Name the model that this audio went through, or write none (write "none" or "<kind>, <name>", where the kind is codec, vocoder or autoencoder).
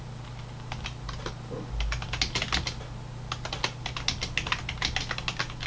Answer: none